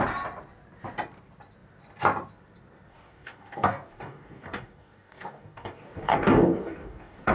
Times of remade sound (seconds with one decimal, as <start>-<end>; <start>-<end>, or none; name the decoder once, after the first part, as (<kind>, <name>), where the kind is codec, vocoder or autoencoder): 2.9-7.3 (codec, DAC)